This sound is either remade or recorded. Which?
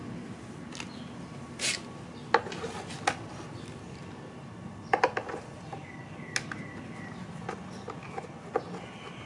recorded